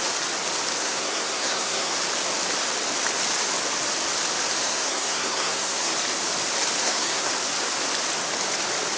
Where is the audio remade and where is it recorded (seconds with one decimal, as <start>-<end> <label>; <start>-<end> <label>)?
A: 0.0-0.8 recorded; 0.8-2.0 remade; 2.0-4.6 recorded; 4.6-5.9 remade; 5.9-6.8 recorded; 6.8-7.3 remade; 7.3-9.0 recorded